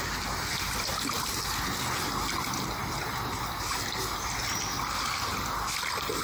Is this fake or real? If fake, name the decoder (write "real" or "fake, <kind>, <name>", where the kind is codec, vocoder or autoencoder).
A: real